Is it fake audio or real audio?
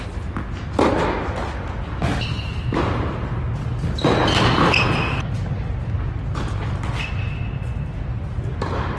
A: real